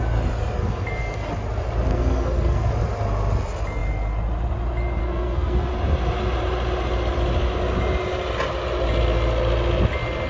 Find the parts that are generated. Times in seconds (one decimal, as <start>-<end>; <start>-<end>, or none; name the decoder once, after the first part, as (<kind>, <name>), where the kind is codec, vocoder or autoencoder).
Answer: 0.6-1.3 (codec, SNAC); 1.9-2.7; 5.0-5.7